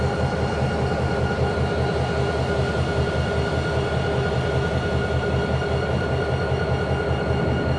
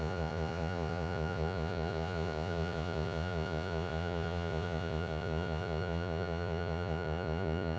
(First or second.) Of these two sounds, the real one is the first